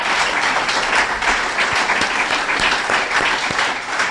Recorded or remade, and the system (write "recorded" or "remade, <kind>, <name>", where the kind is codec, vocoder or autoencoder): recorded